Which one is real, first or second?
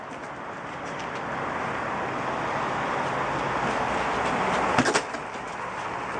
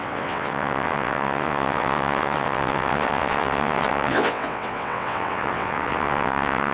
first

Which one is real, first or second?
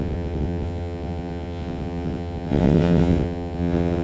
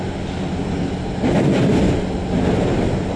second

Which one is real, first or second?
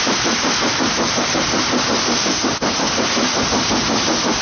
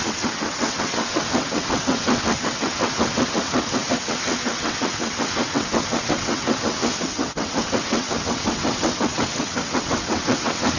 first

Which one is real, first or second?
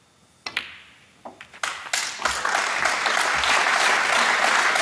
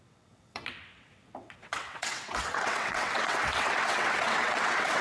first